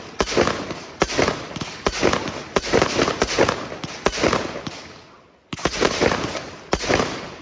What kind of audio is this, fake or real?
real